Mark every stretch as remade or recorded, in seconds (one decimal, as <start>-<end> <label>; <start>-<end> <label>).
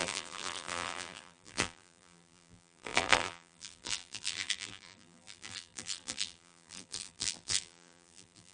0.0-8.5 remade